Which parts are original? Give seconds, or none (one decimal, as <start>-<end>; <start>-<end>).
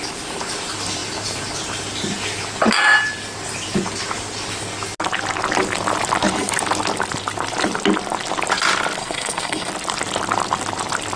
0.0-9.0; 9.7-11.2